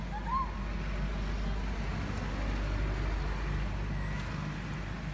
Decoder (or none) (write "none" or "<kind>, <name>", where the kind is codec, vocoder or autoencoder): none